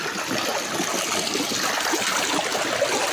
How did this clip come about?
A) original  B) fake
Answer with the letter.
A